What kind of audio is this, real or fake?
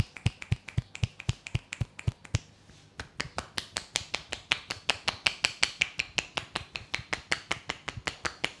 real